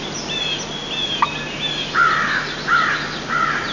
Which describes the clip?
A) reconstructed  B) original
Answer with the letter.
B